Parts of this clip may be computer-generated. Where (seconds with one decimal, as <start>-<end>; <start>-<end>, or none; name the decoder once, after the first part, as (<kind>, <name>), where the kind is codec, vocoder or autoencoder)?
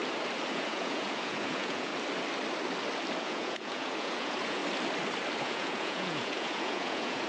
0.5-1.9 (vocoder, Vocos); 3.2-4.6; 5.4-7.3